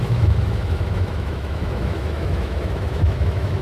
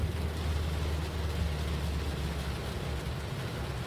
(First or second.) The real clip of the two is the second